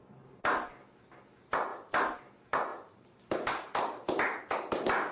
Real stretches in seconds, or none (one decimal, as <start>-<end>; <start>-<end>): 1.7-2.2; 2.7-4.4